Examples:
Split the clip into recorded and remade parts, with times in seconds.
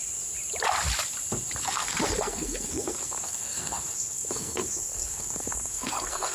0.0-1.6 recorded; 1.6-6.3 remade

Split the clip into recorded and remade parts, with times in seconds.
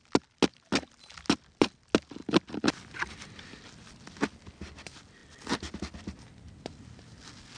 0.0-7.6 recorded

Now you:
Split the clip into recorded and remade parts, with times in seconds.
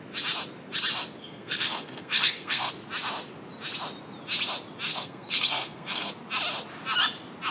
0.0-1.2 recorded; 1.2-2.7 remade; 2.7-4.9 recorded; 4.9-6.1 remade; 6.1-7.5 recorded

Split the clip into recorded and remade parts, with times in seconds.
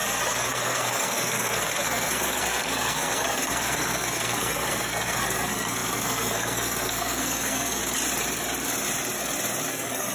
0.0-7.8 remade; 7.8-9.7 recorded; 9.7-10.1 remade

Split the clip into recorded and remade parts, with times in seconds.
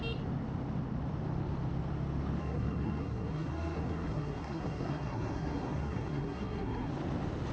0.0-2.4 recorded; 2.4-6.9 remade; 6.9-7.5 recorded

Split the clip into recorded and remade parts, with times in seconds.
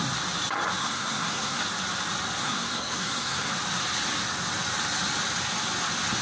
0.0-0.8 recorded; 0.8-1.6 remade; 1.6-2.4 recorded; 2.4-3.5 remade; 3.5-6.2 recorded